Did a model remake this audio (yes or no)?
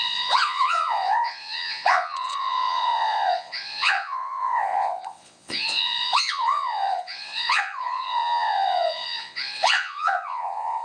yes